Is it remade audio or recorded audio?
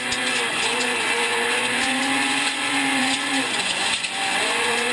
remade